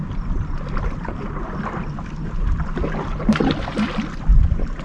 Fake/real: real